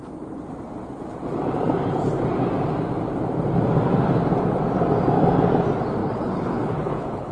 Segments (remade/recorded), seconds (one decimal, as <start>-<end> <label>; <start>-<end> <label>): 0.0-6.0 recorded; 6.0-7.3 remade